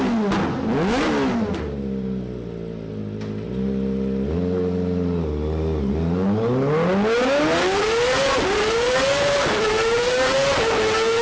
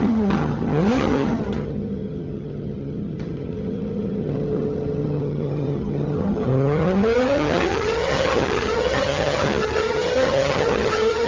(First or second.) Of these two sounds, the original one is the first